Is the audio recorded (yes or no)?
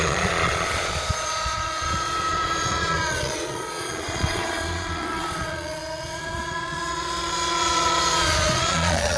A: no